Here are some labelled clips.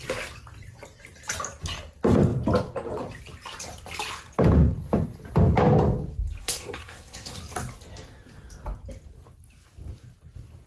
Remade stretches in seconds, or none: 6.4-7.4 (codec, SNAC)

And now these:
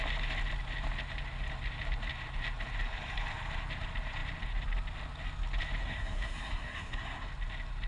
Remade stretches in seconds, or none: 5.8-7.3 (codec, SNAC)

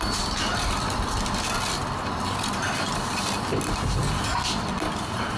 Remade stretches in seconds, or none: none

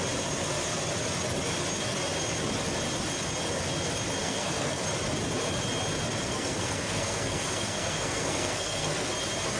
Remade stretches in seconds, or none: 4.2-4.8 (codec, SNAC); 6.2-9.1

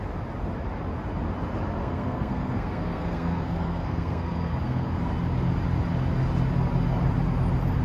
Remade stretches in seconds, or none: 1.8-5.0 (codec, SNAC)

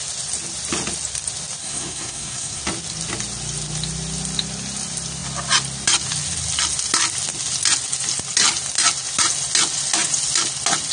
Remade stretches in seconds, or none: 1.6-2.6 (codec, SNAC)

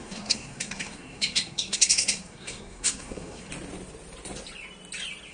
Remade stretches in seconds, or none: 0.0-3.5 (codec, SNAC)